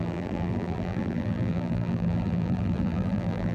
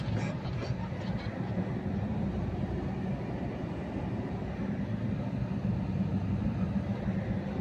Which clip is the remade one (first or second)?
first